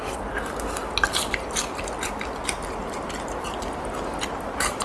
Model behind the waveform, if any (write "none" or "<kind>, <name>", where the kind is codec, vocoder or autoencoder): none